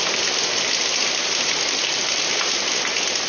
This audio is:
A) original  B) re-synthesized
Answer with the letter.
A